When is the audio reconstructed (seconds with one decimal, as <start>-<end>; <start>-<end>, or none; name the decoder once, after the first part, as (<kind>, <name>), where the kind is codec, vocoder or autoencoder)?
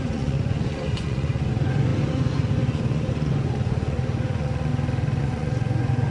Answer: 0.0-4.7 (vocoder, Vocos); 5.2-6.1